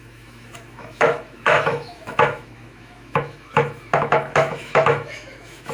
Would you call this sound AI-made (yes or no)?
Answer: yes